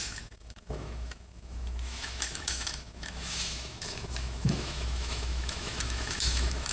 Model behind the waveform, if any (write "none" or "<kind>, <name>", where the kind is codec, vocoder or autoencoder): autoencoder, DAC-VAE